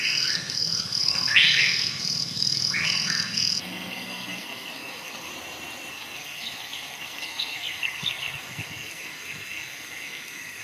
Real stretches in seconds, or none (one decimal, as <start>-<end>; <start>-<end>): 5.3-5.9